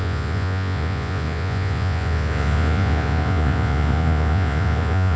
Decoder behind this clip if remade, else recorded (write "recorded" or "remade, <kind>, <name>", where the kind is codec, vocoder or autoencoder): remade, vocoder, Vocos